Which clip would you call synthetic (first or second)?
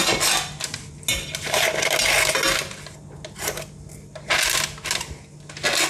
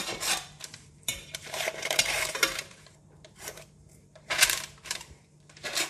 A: second